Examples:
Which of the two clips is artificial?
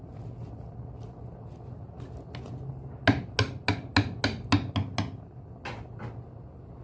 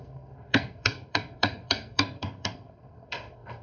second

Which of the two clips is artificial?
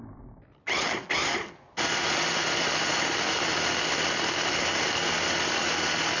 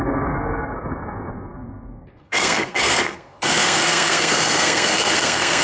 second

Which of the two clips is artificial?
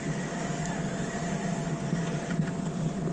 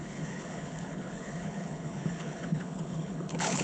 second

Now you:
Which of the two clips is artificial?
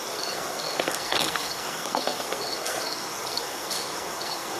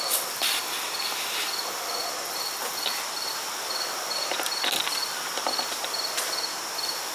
first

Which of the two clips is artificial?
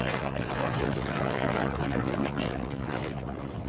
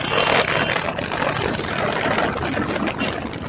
first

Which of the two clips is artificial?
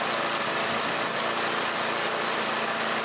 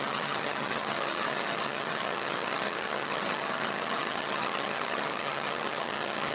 second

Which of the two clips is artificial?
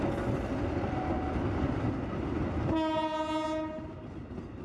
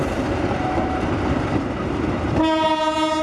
second